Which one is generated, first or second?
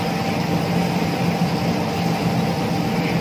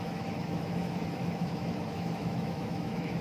second